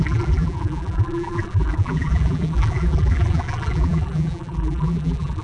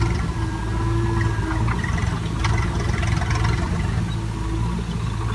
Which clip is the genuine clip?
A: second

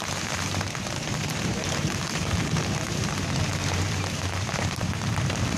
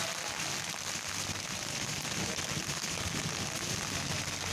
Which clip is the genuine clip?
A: second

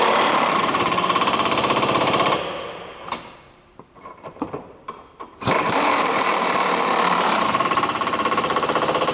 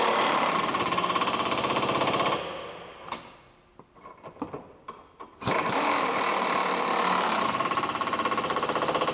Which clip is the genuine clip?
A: second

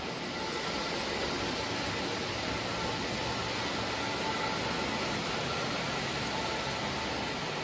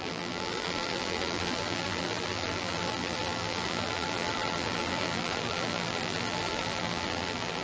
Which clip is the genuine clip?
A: first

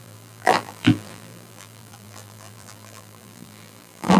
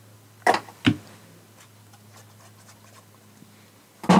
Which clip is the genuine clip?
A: second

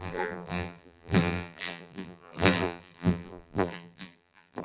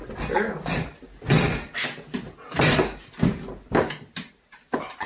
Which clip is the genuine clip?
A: second